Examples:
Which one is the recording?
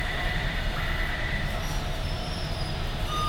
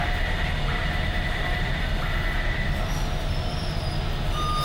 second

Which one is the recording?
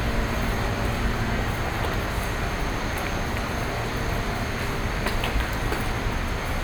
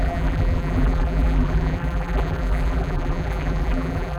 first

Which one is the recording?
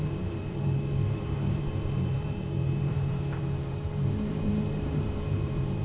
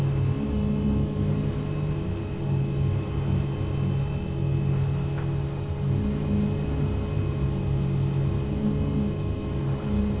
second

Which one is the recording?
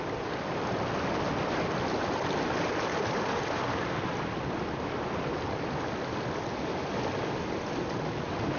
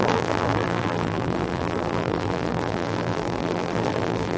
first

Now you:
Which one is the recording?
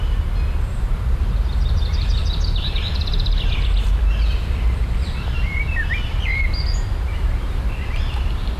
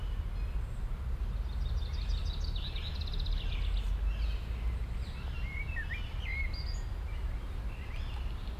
second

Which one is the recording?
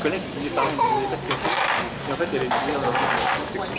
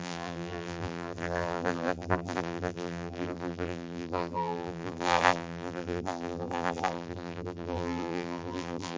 first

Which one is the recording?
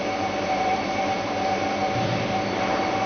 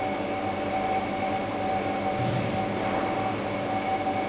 second